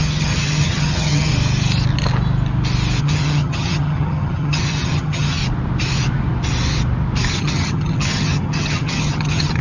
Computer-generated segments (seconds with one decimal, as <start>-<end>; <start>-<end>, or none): 0.0-1.3; 3.0-5.4; 7.3-9.6